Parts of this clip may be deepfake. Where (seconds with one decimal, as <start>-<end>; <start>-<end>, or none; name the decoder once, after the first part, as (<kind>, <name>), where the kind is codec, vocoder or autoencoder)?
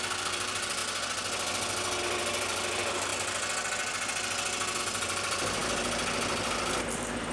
0.0-0.8 (vocoder, BigVGAN v2); 2.0-3.1; 4.8-5.6; 6.8-7.3